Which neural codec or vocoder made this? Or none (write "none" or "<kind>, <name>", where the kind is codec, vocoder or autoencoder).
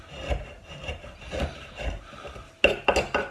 none